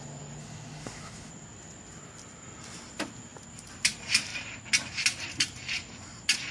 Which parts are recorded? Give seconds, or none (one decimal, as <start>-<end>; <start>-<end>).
0.0-0.4; 1.3-6.5